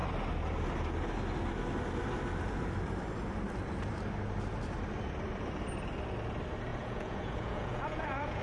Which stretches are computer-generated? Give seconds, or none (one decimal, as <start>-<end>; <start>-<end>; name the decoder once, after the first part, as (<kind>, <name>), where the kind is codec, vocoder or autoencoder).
6.7-8.4 (vocoder, Vocos)